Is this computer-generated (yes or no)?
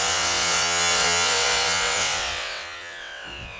yes